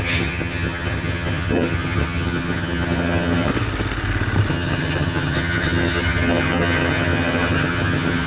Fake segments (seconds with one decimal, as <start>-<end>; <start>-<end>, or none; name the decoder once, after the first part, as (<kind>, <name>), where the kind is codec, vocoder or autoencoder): 0.0-3.5 (vocoder, HiFi-GAN); 4.5-8.3